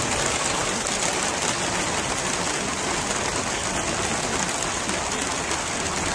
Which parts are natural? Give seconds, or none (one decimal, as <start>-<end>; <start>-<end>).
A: 0.0-6.1